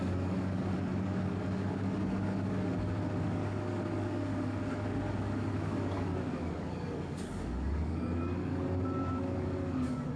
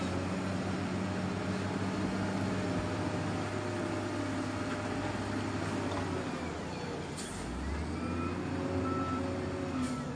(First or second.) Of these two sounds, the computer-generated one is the first